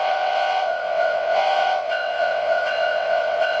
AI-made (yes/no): yes